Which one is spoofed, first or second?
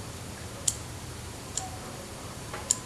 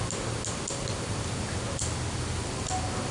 first